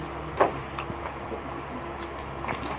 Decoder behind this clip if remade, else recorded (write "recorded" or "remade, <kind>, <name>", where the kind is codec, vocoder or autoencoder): recorded